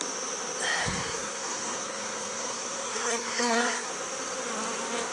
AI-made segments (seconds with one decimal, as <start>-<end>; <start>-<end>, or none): 0.8-3.9